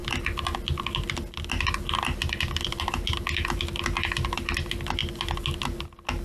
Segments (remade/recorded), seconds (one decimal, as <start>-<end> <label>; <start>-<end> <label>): 0.0-6.2 recorded